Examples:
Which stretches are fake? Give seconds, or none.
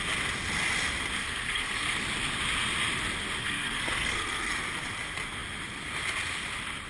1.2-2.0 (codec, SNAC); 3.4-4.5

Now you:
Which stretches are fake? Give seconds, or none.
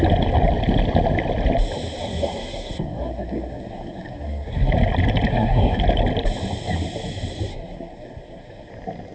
2.0-4.7 (codec, SNAC); 5.3-5.8; 7.5-8.7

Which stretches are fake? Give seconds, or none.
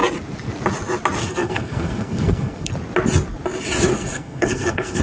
1.2-2.7 (codec, SNAC); 3.9-5.0